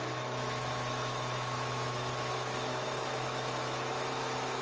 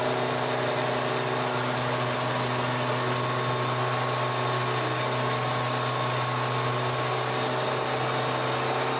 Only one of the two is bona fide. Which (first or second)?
second